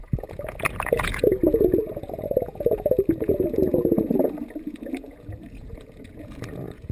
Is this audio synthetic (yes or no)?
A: yes